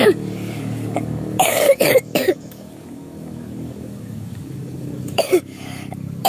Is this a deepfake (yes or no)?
yes